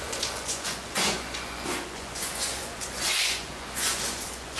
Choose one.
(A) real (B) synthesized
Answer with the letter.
B